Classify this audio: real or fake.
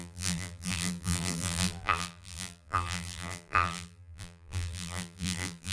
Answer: fake